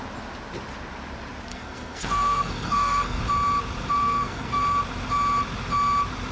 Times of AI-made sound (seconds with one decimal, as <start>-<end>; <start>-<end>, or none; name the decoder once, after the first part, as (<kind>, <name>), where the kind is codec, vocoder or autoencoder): 1.5-3.2 (codec, SNAC); 4.0-4.6